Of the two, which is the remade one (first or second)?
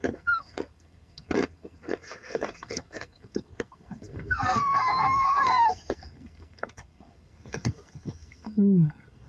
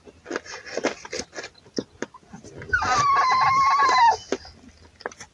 first